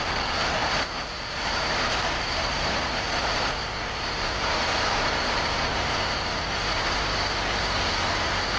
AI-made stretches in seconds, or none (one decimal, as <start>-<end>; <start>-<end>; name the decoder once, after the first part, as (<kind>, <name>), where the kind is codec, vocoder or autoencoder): 0.0-8.6 (vocoder, BigVGAN v2)